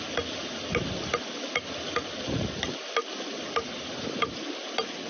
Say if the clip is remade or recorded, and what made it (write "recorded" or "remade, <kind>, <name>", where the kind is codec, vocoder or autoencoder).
recorded